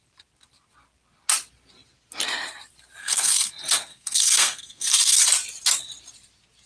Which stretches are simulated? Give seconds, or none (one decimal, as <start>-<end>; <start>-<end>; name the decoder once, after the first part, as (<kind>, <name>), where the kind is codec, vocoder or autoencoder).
3.0-3.5 (codec, SNAC); 3.9-5.2